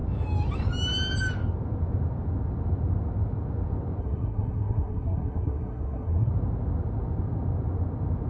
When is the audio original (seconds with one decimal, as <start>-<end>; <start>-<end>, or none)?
0.0-4.0; 6.3-8.3